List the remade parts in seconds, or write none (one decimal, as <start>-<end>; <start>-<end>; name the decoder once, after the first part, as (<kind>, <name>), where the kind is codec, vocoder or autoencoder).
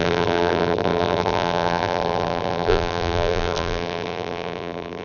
0.0-5.0 (vocoder, BigVGAN v2)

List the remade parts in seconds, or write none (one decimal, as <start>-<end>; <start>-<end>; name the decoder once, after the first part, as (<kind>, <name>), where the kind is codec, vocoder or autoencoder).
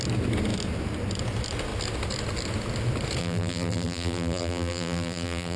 3.2-5.6 (vocoder, BigVGAN v2)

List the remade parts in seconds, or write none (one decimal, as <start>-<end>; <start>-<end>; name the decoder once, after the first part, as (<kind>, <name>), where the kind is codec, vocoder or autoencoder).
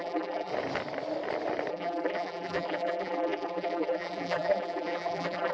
0.0-0.5 (vocoder, BigVGAN v2); 1.7-5.5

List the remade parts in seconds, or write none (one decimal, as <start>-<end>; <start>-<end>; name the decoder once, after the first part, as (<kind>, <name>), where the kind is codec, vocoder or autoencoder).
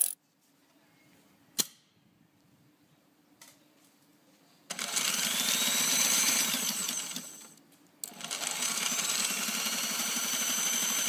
1.6-6.8 (vocoder, BigVGAN v2); 9.9-11.1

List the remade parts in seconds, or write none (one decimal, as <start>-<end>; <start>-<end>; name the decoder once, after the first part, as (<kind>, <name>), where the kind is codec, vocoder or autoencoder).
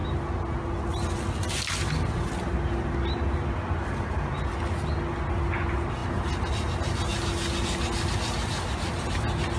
none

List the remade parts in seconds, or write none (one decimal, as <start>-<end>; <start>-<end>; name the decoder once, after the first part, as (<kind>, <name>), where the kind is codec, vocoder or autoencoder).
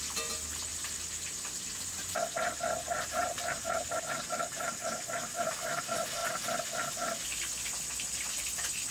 0.7-2.1 (vocoder, BigVGAN v2); 3.2-5.0